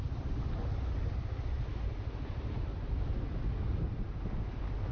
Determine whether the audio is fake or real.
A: real